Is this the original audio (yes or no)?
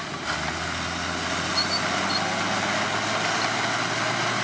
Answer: yes